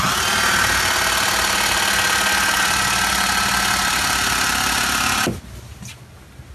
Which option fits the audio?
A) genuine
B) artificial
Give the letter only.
A